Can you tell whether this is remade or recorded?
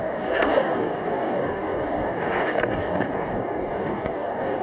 remade